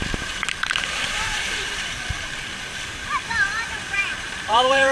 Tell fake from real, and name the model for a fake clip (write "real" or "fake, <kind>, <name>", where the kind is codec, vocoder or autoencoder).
fake, vocoder, BigVGAN v2